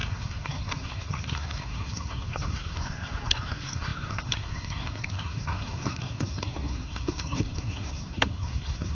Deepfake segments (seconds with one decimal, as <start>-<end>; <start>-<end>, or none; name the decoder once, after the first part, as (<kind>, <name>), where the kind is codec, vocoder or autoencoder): 0.0-8.9 (codec, SNAC)